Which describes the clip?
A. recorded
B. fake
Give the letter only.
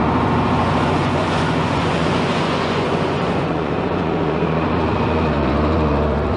B